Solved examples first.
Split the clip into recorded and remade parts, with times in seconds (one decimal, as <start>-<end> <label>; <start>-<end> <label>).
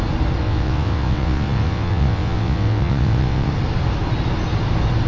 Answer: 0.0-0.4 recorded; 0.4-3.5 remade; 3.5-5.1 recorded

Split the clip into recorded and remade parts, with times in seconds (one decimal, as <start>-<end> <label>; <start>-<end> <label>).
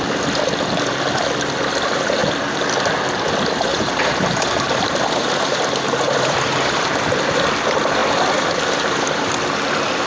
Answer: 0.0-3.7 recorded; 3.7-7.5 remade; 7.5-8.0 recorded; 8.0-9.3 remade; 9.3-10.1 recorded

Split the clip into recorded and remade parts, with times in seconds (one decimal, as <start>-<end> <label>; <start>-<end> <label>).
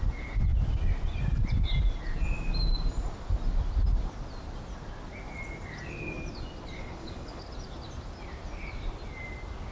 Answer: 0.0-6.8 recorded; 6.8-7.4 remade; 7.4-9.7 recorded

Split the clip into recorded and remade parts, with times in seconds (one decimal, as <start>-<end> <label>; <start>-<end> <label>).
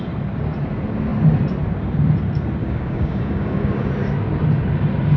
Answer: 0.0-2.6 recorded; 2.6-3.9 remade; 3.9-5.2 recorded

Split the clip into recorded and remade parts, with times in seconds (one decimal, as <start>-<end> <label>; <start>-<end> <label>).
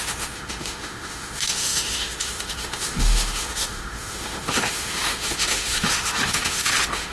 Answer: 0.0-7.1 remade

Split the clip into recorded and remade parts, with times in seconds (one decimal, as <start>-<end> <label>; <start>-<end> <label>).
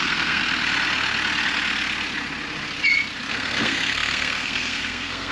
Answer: 0.0-0.4 remade; 0.4-3.3 recorded; 3.3-5.3 remade